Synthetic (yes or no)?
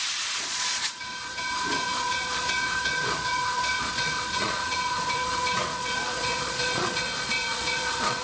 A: yes